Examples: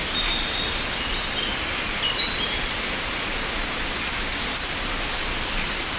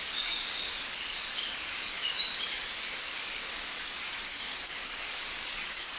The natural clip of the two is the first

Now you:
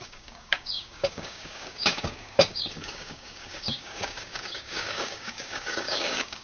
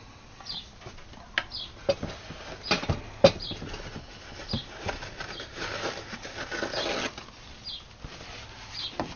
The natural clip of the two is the second